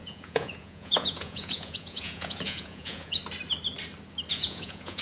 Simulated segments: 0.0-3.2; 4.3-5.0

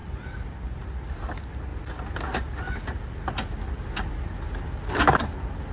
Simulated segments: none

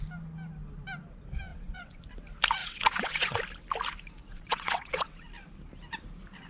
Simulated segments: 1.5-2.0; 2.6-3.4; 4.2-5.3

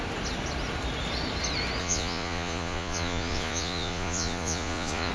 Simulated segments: 1.8-5.1

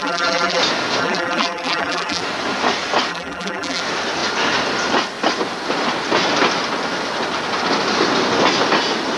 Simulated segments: 0.0-0.6; 1.0-2.2; 3.1-3.8

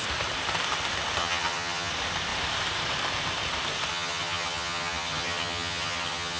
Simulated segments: 1.2-1.9; 3.9-6.4

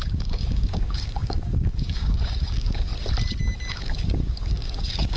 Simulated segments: 0.0-2.9; 3.7-5.2

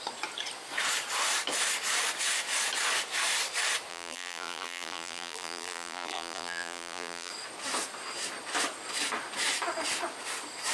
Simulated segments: 3.9-7.3